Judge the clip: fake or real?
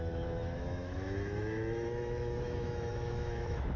fake